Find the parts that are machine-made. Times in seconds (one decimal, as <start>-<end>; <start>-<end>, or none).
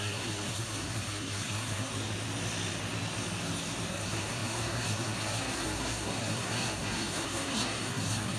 0.0-1.9; 3.9-8.4